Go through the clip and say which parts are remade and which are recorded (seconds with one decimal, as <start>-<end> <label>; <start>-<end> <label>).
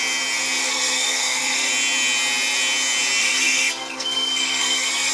0.0-0.6 recorded; 0.6-1.7 remade; 1.7-3.2 recorded; 3.2-5.1 remade